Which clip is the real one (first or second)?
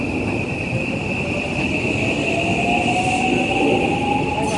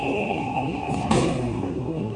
first